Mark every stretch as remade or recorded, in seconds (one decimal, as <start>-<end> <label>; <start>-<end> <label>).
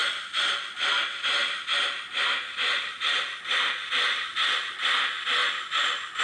0.0-6.2 recorded